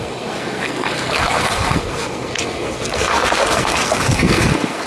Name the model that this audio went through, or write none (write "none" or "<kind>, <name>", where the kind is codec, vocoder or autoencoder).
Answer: codec, SNAC